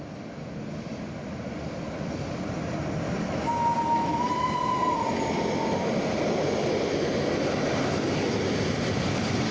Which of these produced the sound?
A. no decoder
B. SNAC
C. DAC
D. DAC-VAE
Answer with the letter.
A